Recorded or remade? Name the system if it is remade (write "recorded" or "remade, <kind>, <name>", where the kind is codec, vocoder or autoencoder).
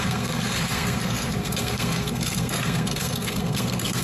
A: remade, codec, SNAC